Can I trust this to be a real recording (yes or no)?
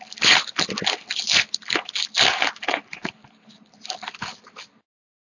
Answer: yes